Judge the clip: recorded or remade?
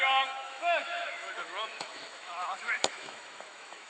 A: remade